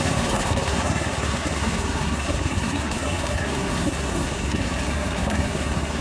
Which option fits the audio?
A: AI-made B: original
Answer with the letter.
A